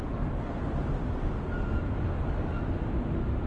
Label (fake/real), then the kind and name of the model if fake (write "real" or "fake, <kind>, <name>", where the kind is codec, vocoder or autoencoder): real